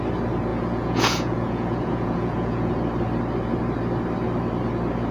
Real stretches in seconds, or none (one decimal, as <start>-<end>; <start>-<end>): 0.0-0.5; 2.7-5.1